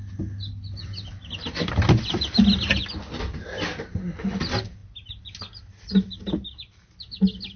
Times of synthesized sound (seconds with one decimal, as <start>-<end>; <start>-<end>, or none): none